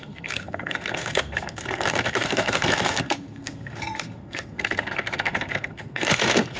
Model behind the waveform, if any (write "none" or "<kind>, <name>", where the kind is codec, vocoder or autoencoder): codec, SNAC